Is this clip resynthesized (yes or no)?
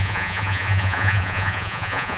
yes